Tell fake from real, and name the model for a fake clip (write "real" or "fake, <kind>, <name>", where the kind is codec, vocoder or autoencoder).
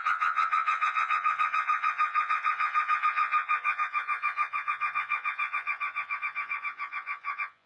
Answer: fake, vocoder, Vocos